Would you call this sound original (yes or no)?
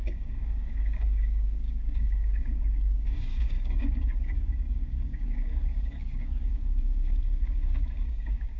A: no